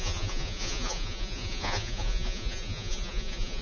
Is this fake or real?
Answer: fake